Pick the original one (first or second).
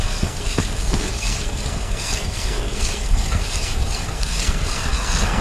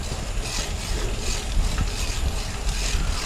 second